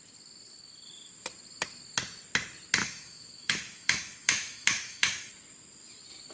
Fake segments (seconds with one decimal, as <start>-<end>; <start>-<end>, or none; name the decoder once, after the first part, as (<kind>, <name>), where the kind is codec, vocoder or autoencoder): 2.8-5.3 (autoencoder, DAC-VAE)